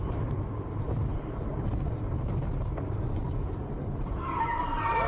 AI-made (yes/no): yes